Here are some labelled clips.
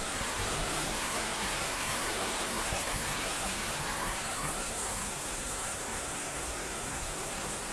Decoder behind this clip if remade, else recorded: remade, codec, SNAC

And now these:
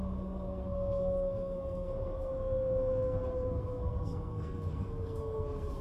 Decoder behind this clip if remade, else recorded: remade, codec, SNAC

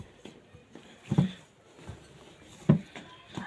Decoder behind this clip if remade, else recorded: recorded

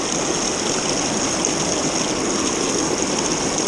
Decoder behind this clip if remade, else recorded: recorded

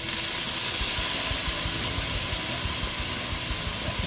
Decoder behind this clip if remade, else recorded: recorded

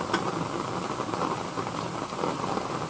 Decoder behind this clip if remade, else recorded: recorded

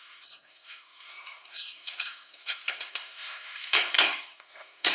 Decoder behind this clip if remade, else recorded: remade, codec, SNAC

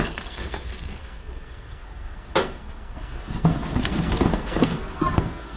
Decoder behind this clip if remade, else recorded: remade, codec, SNAC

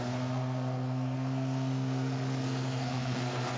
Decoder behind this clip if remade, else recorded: remade, codec, SNAC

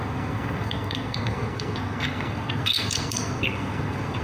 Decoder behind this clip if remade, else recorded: remade, codec, SNAC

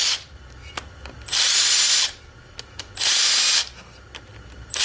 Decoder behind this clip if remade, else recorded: recorded